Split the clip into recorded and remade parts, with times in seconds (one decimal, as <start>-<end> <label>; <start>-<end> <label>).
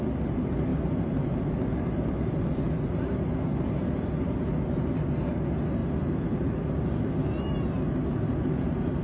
0.0-9.0 recorded